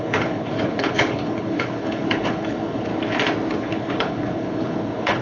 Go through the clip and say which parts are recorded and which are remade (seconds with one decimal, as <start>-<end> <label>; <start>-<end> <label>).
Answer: 0.0-2.9 remade; 2.9-3.5 recorded; 3.5-5.2 remade